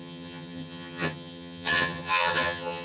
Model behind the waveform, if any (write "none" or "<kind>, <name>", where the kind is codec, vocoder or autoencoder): vocoder, HiFi-GAN